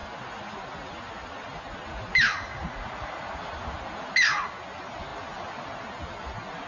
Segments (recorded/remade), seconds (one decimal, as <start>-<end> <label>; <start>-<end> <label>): 0.0-2.5 recorded; 2.5-3.4 remade; 3.4-6.7 recorded